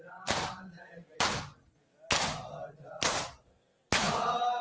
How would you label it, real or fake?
real